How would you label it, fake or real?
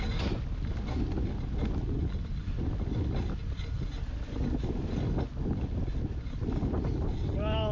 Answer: real